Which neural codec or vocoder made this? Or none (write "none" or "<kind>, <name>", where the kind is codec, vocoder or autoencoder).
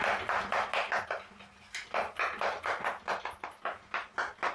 none